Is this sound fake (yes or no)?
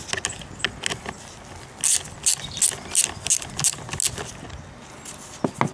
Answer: no